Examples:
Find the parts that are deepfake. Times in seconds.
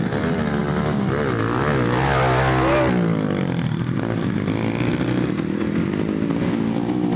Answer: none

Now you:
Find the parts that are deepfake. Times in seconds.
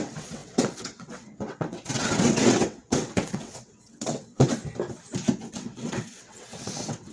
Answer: 0.0-4.6 (vocoder, WaveNeXt); 5.6-7.1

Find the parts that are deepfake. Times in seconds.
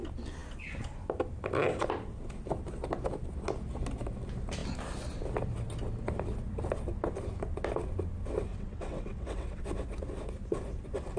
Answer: 8.5-9.6 (vocoder, WaveNeXt)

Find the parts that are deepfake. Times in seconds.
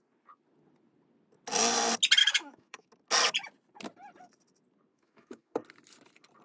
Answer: 2.2-2.9 (autoencoder, DAC-VAE); 4.9-5.6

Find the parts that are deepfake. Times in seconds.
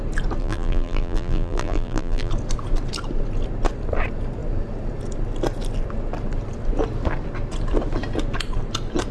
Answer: 0.4-2.3 (vocoder, BigVGAN v2)